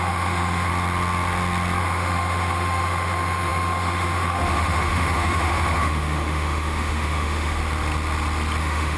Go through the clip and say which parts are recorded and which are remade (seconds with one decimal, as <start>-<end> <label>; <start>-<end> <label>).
0.0-0.7 remade; 0.7-1.8 recorded; 1.8-7.6 remade; 7.6-8.6 recorded; 8.6-9.0 remade